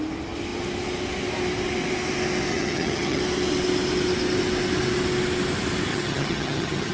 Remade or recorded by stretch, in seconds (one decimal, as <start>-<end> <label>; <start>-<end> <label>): 0.0-2.5 recorded; 2.5-3.2 remade; 3.2-5.9 recorded; 5.9-6.9 remade